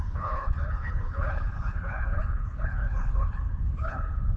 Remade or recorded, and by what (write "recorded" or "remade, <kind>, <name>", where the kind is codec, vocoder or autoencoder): remade, codec, HILCodec